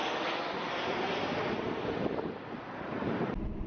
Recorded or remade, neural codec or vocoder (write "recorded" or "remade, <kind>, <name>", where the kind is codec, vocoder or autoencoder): recorded